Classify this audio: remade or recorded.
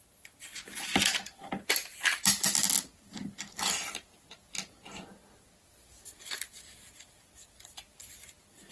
recorded